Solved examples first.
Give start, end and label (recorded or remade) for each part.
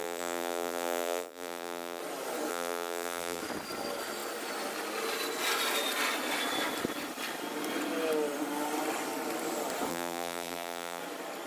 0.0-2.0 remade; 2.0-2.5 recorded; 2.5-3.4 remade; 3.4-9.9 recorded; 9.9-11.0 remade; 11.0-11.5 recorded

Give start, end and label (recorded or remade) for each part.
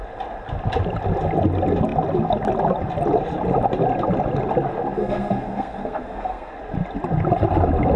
0.0-5.0 recorded; 5.0-6.6 remade; 6.6-8.0 recorded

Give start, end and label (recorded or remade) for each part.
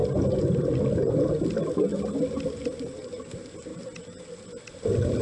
0.0-5.2 recorded